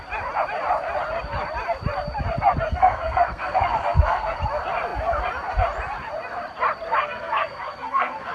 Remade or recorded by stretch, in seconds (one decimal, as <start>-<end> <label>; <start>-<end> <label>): 0.0-2.7 recorded; 2.7-4.4 remade; 4.4-7.0 recorded; 7.0-8.3 remade